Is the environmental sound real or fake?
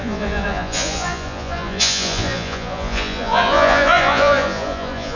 fake